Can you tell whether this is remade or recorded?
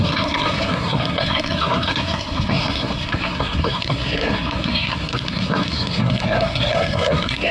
remade